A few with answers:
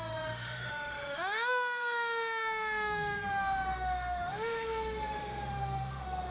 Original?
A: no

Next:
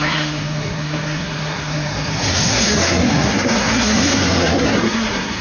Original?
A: no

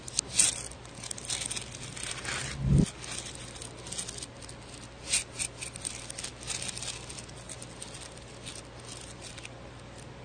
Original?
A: yes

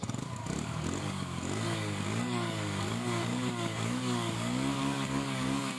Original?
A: no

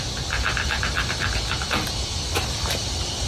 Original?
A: yes